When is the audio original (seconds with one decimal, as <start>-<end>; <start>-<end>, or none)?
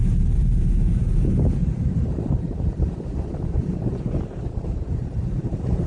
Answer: none